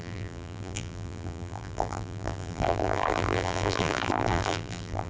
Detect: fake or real fake